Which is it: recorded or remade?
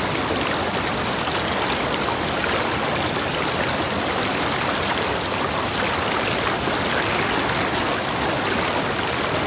recorded